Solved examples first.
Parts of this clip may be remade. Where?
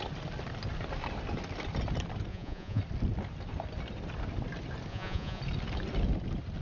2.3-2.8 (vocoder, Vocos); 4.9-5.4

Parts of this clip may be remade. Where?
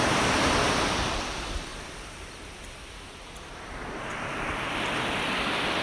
none